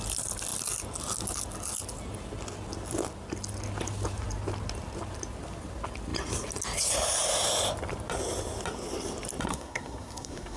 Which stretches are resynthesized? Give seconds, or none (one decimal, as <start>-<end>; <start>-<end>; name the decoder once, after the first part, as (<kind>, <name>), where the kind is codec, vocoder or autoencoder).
9.5-10.6 (codec, SNAC)